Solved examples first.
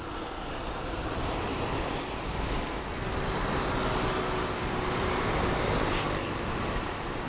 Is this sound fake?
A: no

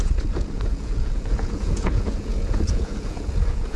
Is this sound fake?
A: yes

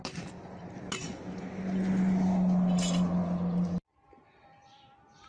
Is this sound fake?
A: no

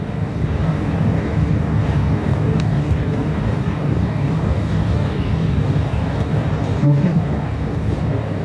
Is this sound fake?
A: yes